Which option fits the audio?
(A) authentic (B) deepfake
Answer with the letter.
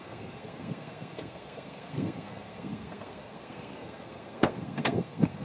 B